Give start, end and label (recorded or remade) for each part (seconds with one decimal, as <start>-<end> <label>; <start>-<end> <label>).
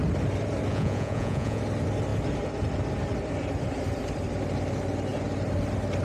0.0-0.7 recorded; 0.7-1.6 remade; 1.6-6.0 recorded